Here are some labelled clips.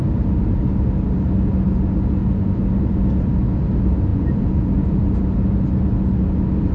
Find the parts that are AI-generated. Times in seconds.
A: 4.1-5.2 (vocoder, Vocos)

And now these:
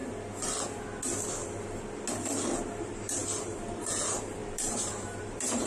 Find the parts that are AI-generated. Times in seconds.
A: 2.8-5.7 (vocoder, BigVGAN v2)

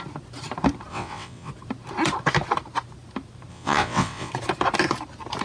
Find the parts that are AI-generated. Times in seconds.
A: 0.9-1.5 (vocoder, WaveNeXt); 3.5-4.3

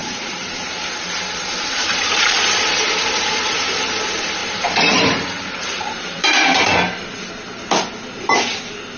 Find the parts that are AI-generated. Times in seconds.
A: 0.0-3.9 (vocoder, BigVGAN v2); 4.4-7.2

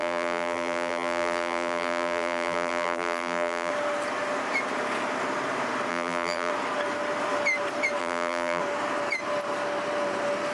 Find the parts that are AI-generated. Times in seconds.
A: 0.0-3.7 (vocoder, BigVGAN v2); 5.9-6.5; 8.0-8.6

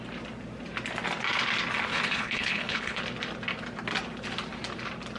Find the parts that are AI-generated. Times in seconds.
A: 1.9-3.0 (codec, HILCodec)

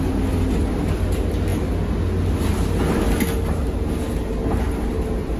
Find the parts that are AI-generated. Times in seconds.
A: none

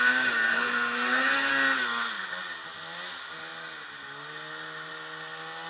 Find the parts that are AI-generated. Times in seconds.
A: 0.5-1.5 (codec, SNAC)